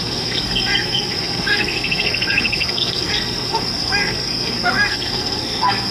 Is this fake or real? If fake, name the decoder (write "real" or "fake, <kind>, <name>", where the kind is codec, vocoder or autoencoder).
fake, codec, SNAC